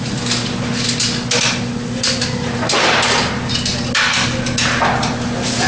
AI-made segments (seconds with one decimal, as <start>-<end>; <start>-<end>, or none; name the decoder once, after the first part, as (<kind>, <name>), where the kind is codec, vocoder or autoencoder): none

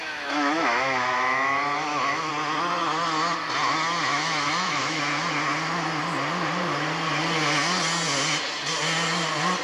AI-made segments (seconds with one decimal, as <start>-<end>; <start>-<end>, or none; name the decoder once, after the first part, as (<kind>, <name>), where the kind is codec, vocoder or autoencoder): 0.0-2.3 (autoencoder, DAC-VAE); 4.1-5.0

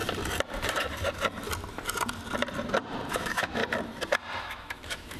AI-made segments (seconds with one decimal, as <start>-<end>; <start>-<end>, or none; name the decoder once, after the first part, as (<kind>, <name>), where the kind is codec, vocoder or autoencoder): 3.1-3.6 (autoencoder, DAC-VAE); 4.4-5.2

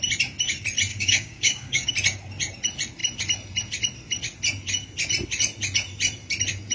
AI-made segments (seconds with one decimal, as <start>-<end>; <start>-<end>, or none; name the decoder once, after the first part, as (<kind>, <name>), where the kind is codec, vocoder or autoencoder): 0.9-1.9 (codec, DAC)

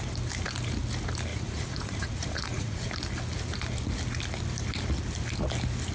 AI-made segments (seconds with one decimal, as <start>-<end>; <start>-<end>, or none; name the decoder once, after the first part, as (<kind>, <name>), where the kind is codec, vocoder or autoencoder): 1.3-2.9 (vocoder, Vocos)